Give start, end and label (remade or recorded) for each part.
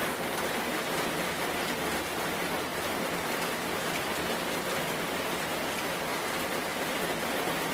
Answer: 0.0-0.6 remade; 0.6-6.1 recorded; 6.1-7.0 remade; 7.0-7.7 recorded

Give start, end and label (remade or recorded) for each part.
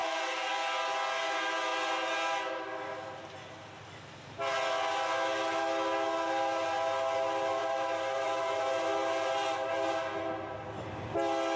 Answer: 0.0-0.5 remade; 0.5-7.6 recorded; 7.6-8.6 remade; 8.6-11.6 recorded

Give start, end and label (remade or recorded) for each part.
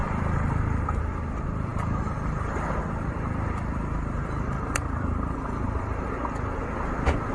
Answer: 0.0-1.0 remade; 1.0-1.7 recorded; 1.7-6.1 remade; 6.1-7.3 recorded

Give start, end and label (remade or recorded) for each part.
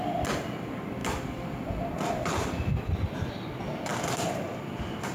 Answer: 0.0-3.9 recorded; 3.9-4.4 remade; 4.4-5.1 recorded